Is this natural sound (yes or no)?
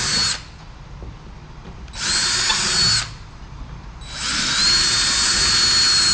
yes